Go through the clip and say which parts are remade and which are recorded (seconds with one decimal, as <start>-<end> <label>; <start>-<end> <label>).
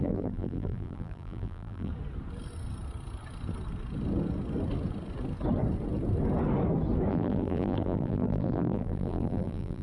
0.0-1.9 remade; 1.9-7.1 recorded; 7.1-9.8 remade